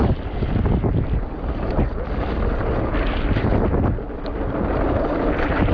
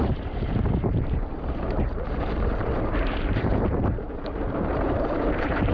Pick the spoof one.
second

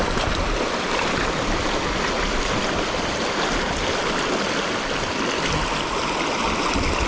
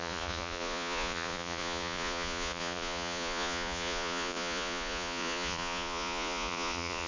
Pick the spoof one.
second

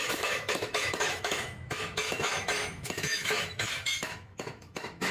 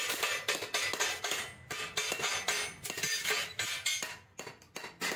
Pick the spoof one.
first